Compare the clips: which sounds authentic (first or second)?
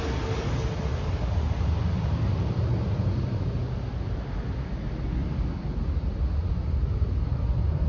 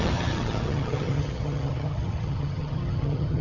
first